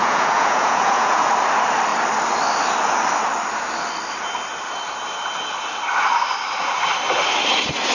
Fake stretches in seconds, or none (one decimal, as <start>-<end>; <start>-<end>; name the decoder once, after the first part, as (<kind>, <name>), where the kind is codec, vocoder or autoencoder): 0.0-1.3 (vocoder, Vocos)